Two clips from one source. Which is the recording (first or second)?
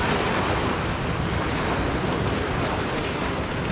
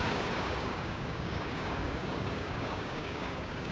first